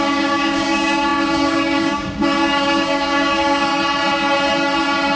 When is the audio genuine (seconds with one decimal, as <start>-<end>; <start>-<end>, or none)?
3.7-5.2

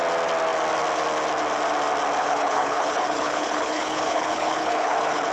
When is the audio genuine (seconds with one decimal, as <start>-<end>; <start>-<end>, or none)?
0.0-2.2

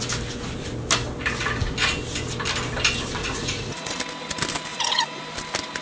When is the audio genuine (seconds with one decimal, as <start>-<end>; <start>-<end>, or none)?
0.0-3.2; 4.0-4.7; 5.2-5.8

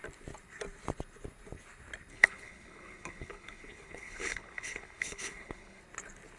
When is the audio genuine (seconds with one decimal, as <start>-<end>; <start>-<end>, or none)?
0.0-2.1; 5.8-6.4